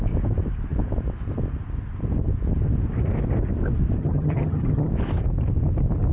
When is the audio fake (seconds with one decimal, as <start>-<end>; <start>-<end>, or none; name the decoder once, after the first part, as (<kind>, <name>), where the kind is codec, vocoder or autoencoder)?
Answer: 4.0-4.9 (vocoder, HiFi-GAN)